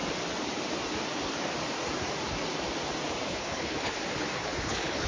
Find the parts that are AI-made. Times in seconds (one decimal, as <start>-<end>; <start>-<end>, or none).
3.3-4.0; 4.4-5.1